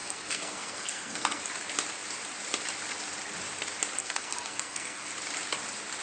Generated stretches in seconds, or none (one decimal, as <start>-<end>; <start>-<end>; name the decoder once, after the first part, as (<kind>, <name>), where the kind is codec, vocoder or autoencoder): 0.0-1.4 (codec, SNAC); 4.0-5.1